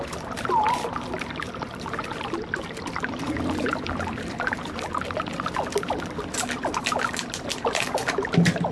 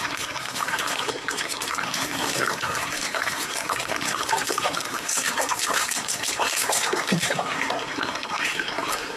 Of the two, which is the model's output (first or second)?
second